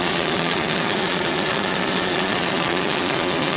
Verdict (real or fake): fake